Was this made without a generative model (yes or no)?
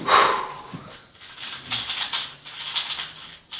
yes